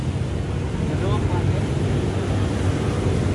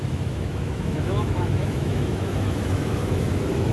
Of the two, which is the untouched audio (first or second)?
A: first